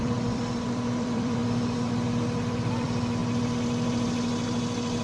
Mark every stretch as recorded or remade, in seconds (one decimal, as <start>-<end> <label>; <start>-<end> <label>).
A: 0.0-1.4 remade; 1.4-2.7 recorded; 2.7-3.2 remade; 3.2-5.0 recorded